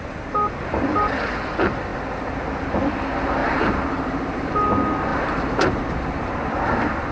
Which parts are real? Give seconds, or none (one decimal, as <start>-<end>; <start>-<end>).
0.0-3.4; 4.5-5.1; 6.3-7.1